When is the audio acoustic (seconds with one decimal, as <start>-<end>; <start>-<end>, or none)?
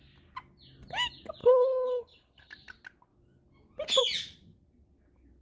0.0-1.4; 2.5-5.4